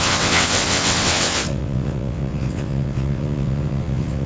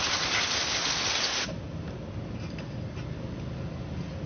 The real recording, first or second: second